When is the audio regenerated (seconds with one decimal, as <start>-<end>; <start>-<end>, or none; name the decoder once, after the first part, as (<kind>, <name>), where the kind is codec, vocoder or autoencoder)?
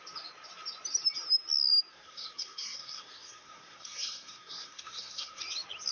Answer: 1.9-5.4 (codec, SNAC)